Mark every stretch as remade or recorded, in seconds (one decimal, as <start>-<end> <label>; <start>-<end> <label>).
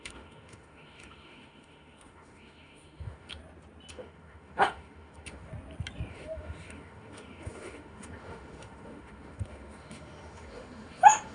0.0-3.4 remade; 3.4-3.9 recorded; 3.9-5.5 remade; 5.5-6.1 recorded; 6.1-11.3 remade